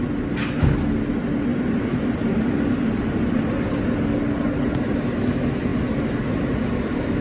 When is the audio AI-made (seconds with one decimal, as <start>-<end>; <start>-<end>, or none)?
none